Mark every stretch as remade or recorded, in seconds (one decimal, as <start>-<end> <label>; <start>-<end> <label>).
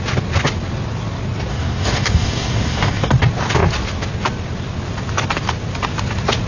0.0-1.5 recorded; 1.5-3.1 remade; 3.1-6.5 recorded